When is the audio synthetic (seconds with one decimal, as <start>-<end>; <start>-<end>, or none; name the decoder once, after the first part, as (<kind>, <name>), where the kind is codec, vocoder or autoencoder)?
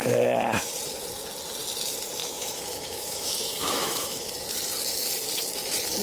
0.0-0.7 (autoencoder, DAC-VAE); 2.2-4.3